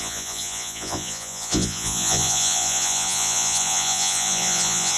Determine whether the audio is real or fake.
fake